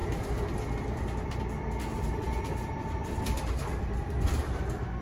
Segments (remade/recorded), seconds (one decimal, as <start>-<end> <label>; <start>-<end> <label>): 0.0-1.9 recorded; 1.9-3.4 remade; 3.4-5.0 recorded